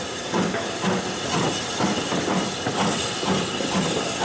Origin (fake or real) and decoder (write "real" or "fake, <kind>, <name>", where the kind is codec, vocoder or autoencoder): real